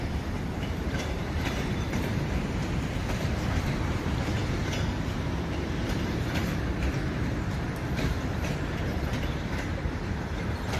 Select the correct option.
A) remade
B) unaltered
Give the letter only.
A